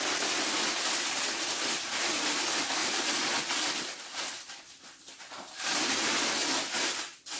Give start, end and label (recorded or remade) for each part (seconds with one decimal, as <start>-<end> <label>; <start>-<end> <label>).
0.0-7.4 recorded